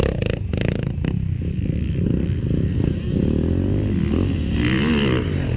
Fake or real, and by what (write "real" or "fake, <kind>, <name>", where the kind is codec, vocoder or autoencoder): real